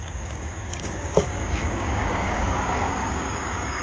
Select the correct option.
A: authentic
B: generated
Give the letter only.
B